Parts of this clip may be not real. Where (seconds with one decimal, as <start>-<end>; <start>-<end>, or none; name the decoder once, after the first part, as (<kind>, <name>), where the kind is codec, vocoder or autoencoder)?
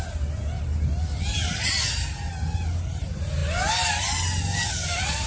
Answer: none